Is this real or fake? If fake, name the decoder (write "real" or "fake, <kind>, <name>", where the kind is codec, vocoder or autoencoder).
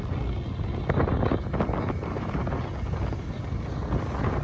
real